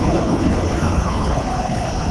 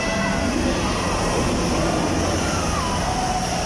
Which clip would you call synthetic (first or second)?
first